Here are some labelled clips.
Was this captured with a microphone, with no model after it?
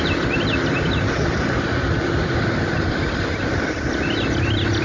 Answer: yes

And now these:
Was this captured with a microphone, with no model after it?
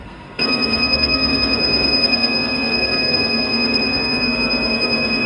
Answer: no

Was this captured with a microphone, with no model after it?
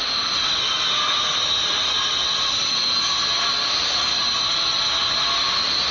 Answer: yes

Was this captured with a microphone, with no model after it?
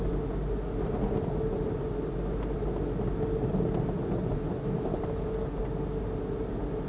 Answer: yes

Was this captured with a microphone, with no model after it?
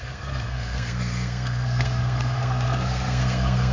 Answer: no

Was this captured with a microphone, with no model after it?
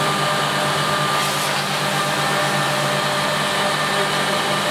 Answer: yes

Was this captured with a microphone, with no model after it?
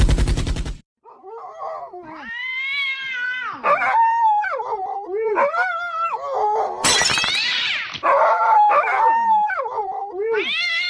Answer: no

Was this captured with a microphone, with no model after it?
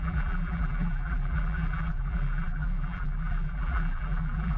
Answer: no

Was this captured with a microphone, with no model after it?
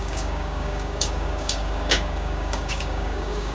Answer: no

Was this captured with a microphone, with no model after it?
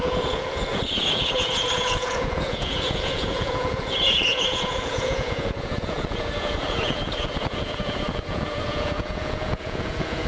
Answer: no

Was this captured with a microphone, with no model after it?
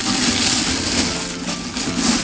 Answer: yes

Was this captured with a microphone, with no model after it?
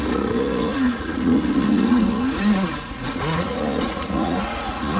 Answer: no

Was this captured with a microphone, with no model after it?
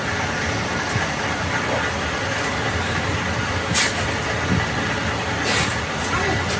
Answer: yes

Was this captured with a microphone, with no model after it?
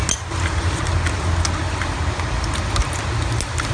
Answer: yes